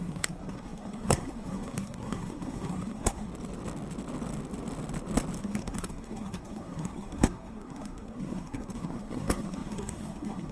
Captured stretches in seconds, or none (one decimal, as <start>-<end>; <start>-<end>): 3.3-5.4